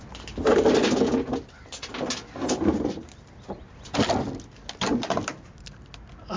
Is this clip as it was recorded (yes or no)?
yes